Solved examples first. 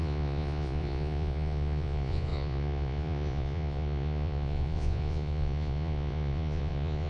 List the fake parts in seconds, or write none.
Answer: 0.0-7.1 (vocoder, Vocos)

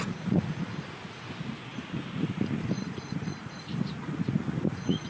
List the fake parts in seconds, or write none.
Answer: 0.0-5.1 (vocoder, Vocos)